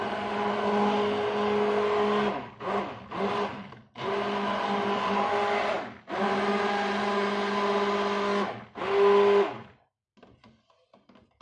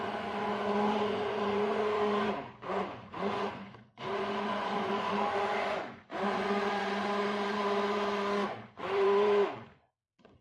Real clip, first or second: first